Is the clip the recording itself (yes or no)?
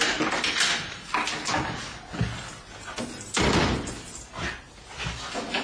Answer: yes